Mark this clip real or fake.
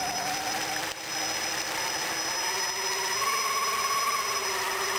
real